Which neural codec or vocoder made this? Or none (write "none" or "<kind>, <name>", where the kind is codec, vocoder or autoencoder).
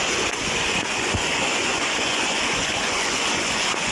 vocoder, Vocos